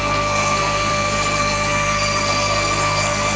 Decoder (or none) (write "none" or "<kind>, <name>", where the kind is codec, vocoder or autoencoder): codec, SNAC